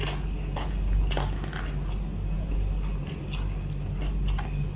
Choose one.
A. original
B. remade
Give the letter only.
A